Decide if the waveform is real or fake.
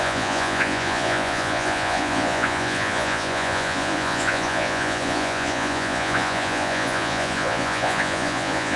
fake